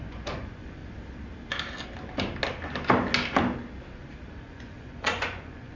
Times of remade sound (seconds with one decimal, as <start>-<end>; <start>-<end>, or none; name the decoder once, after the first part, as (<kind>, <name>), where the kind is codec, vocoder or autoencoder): 0.0-0.8 (vocoder, Vocos); 4.3-5.8